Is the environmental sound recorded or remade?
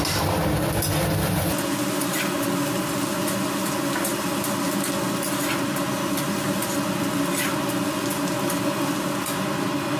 recorded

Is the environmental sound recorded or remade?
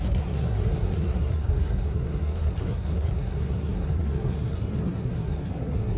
remade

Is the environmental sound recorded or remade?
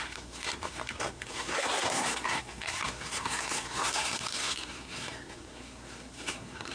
remade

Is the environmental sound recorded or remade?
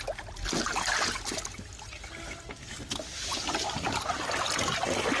recorded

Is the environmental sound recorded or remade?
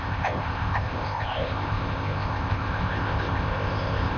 remade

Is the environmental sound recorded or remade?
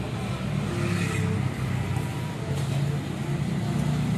recorded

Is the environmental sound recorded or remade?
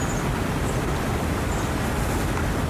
recorded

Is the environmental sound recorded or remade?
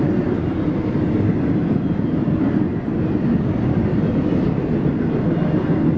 recorded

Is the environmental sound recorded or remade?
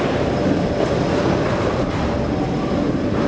recorded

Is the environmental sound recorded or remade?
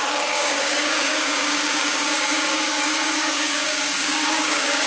remade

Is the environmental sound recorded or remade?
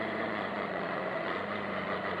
remade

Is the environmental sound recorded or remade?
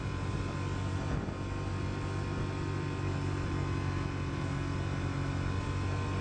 recorded